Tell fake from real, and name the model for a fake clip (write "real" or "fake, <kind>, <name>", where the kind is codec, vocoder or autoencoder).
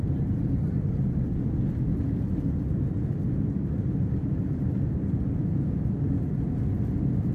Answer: real